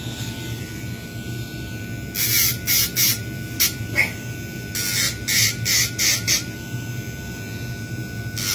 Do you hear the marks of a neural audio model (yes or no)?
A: no